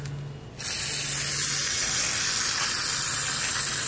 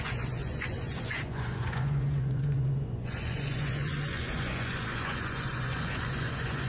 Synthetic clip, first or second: second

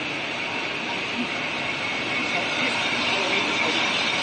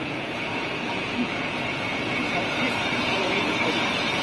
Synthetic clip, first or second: second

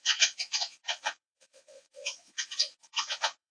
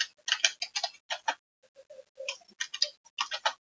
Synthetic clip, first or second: first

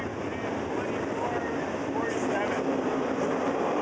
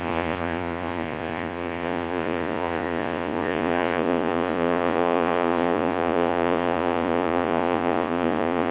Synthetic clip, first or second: second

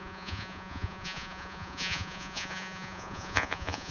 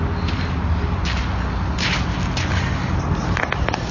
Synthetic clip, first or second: first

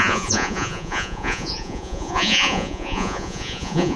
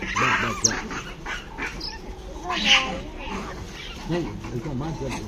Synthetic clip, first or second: first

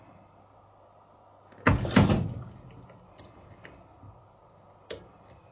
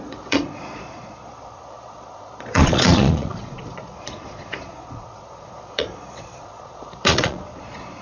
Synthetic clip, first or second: second